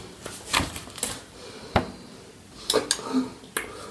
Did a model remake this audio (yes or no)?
no